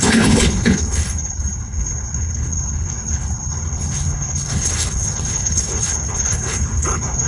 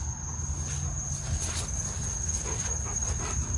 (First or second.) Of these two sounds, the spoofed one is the first